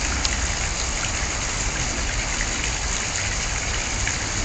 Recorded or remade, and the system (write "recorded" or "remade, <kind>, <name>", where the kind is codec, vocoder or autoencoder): recorded